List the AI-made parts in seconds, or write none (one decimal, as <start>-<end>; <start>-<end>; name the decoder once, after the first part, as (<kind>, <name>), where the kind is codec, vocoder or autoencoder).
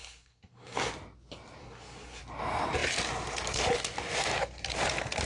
0.0-0.9 (codec, SNAC); 1.6-2.2